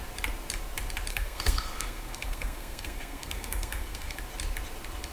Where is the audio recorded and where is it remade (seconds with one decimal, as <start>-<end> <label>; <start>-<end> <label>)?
0.0-1.1 recorded; 1.1-4.2 remade; 4.2-5.1 recorded